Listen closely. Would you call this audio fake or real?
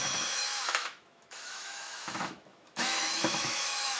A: fake